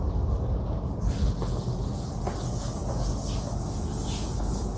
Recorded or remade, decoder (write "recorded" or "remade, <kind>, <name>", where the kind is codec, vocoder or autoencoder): recorded